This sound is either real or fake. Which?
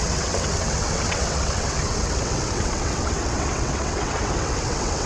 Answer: fake